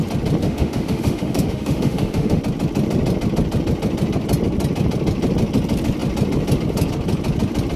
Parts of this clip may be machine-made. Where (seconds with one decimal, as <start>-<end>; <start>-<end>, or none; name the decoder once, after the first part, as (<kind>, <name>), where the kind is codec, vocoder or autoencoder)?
0.4-2.4 (autoencoder, DAC-VAE)